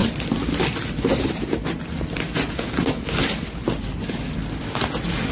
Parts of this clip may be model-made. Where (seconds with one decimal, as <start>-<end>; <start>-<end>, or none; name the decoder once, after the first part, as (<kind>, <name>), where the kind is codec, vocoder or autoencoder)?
none

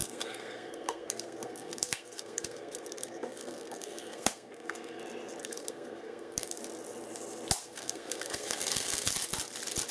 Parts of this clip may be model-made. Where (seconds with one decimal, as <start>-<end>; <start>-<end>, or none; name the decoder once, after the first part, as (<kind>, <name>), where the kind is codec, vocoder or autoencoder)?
0.0-5.0 (codec, SNAC); 5.4-6.6; 7.6-9.1

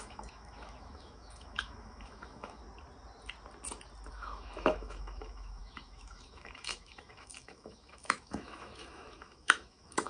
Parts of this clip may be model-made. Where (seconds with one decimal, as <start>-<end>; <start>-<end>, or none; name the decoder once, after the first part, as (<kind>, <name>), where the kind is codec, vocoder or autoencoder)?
0.0-2.6 (autoencoder, DAC-VAE); 4.1-10.1

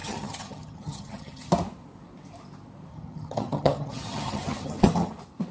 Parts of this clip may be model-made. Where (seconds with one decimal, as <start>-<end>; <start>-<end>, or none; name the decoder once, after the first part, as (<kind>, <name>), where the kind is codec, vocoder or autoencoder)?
0.0-1.5 (vocoder, HiFi-GAN); 2.9-5.1

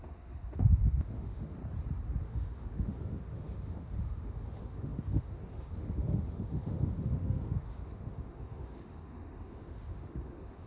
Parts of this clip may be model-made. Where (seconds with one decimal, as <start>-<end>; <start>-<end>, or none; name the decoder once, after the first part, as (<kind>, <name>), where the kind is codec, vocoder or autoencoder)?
0.0-1.6 (autoencoder, DAC-VAE); 2.2-10.7

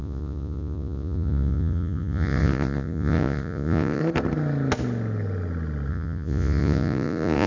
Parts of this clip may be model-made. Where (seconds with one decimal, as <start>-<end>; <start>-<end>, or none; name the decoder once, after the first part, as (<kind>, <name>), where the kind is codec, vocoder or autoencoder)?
0.0-4.0 (vocoder, Vocos); 5.9-7.5

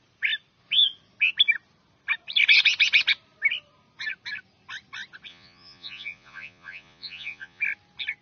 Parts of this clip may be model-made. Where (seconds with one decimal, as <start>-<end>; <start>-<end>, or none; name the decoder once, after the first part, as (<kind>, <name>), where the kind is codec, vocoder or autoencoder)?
5.3-7.6 (vocoder, Vocos)